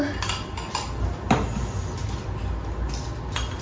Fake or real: real